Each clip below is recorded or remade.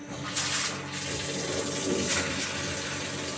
recorded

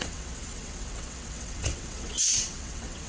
remade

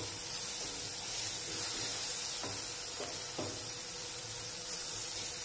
recorded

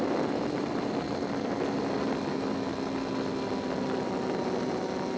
recorded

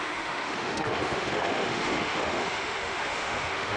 remade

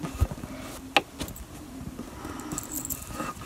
recorded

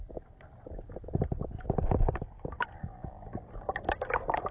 recorded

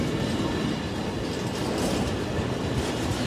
recorded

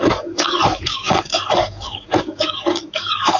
remade